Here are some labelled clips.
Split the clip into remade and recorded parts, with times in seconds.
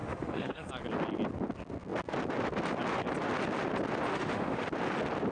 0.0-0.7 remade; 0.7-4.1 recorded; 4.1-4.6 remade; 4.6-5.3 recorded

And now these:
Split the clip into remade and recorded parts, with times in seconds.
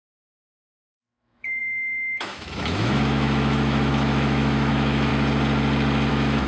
0.0-5.1 remade; 5.1-6.1 recorded; 6.1-6.5 remade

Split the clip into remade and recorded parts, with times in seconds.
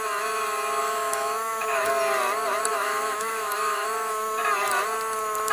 0.0-0.8 recorded; 0.8-1.9 remade; 1.9-2.7 recorded; 2.7-4.4 remade; 4.4-5.5 recorded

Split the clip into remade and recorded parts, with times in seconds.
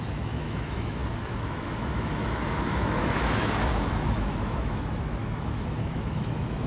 0.0-6.7 remade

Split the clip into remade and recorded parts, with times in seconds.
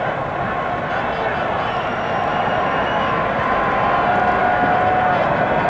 0.0-5.7 recorded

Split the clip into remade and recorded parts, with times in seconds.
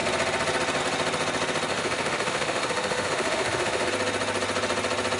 0.0-1.7 recorded; 1.7-3.9 remade; 3.9-5.2 recorded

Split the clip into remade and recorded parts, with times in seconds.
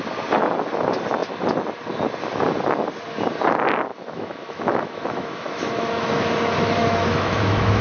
0.0-3.9 recorded; 3.9-6.2 remade; 6.2-6.8 recorded; 6.8-7.8 remade